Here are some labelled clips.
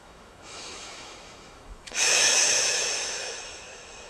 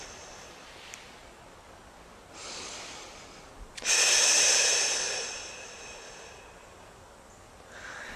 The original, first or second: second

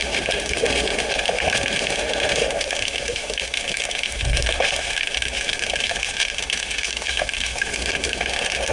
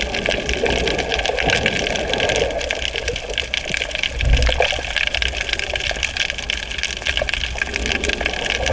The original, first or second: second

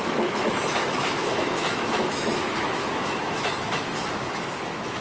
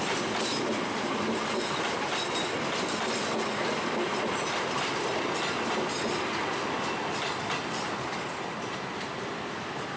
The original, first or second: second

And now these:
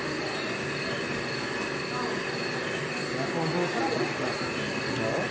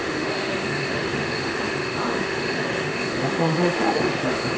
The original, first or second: first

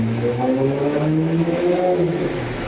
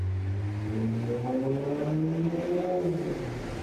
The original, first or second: second